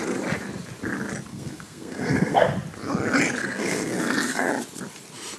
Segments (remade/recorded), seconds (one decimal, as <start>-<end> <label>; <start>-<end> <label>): 0.0-1.3 recorded; 1.3-2.5 remade; 2.5-3.4 recorded; 3.4-4.5 remade; 4.5-5.4 recorded